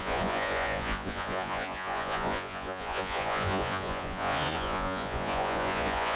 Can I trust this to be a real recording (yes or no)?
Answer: no